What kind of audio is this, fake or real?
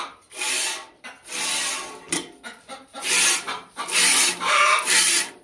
real